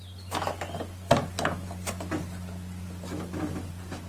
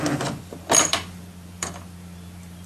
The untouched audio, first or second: first